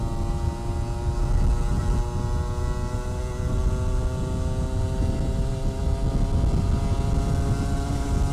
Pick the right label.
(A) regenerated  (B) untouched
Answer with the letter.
B